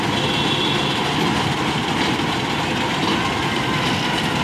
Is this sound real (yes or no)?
yes